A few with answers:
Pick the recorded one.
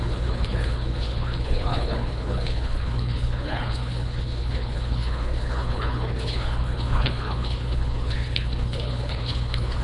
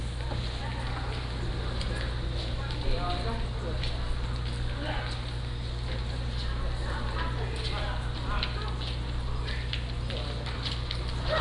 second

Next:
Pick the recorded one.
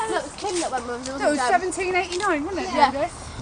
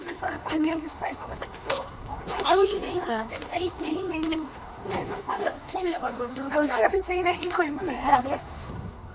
first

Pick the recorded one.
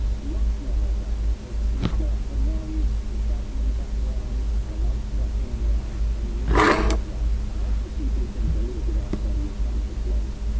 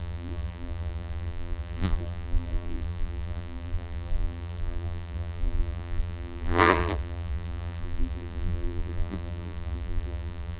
first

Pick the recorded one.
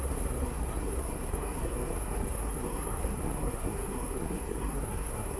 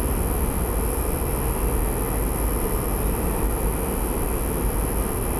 second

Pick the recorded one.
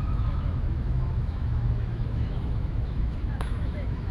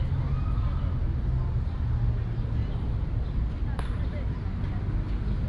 second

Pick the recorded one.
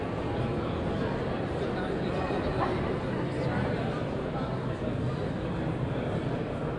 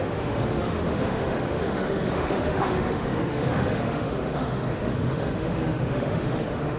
first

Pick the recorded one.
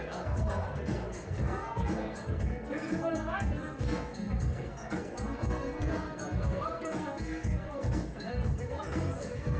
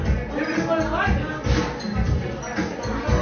second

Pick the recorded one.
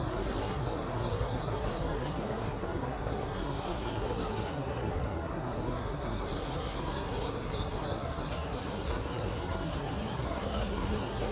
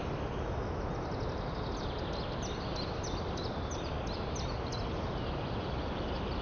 second